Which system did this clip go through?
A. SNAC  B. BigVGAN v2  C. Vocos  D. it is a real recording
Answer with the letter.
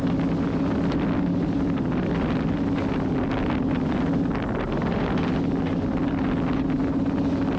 D